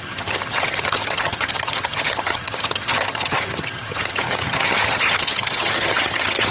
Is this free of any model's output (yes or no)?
no